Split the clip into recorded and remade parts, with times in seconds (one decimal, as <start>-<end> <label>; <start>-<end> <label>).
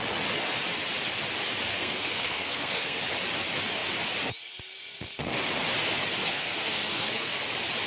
0.0-1.7 recorded; 1.7-3.0 remade; 3.0-6.2 recorded; 6.2-7.5 remade; 7.5-7.9 recorded